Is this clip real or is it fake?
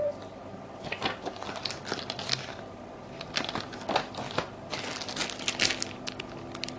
real